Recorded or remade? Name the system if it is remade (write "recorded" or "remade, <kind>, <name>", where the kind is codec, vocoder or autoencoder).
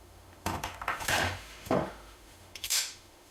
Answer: remade, autoencoder, DAC-VAE